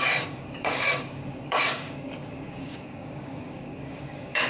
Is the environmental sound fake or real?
fake